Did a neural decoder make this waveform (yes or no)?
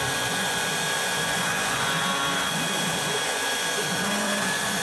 yes